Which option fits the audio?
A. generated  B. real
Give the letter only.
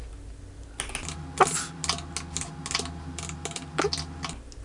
B